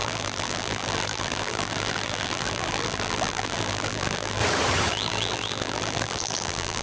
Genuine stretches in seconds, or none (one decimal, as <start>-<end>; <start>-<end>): 4.4-4.9